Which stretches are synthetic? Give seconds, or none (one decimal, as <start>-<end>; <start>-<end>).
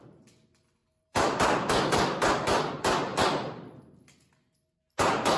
0.8-2.7; 3.1-3.8